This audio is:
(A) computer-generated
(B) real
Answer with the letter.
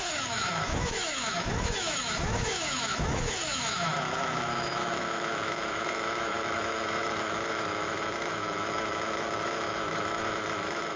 A